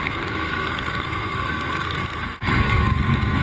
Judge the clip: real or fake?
fake